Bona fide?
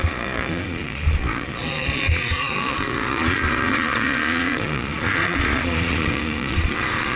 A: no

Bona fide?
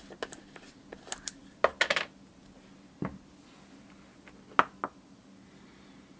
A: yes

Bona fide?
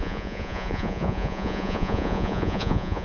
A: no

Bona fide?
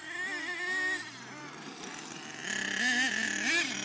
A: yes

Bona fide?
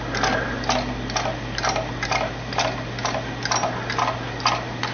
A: yes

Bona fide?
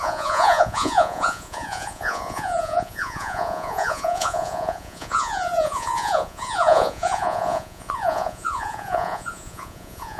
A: no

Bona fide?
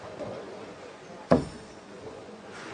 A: no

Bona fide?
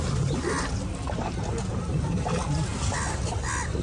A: yes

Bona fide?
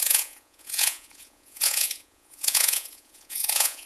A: no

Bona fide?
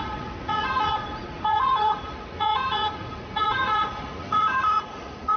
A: no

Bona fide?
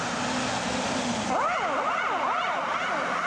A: yes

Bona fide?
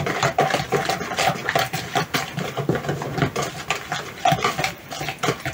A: yes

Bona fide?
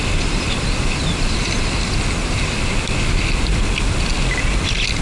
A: yes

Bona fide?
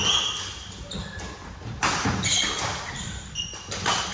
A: yes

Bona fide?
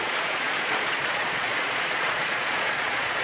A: no